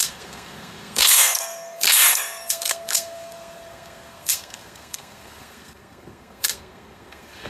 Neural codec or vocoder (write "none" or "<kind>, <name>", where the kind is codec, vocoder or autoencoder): codec, SNAC